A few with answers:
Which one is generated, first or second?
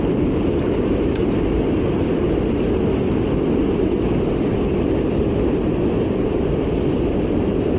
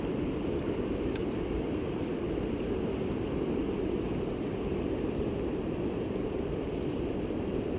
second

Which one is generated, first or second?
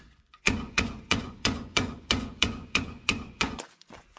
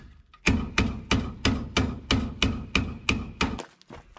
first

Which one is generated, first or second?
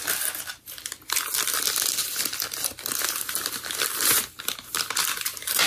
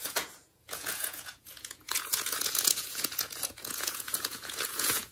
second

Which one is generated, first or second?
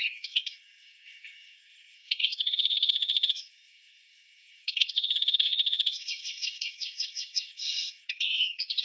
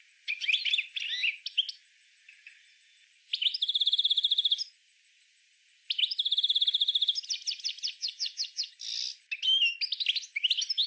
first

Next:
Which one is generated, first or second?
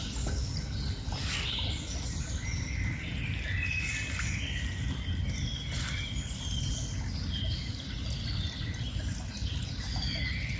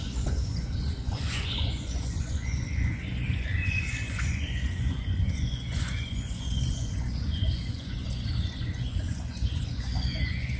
second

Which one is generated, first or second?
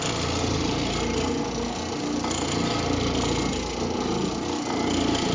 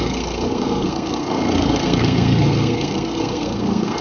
second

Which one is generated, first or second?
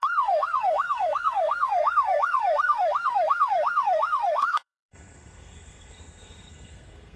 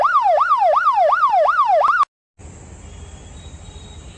first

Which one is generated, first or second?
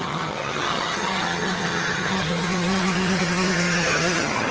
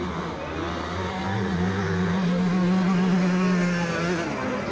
first